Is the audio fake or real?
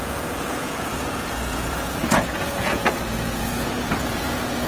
fake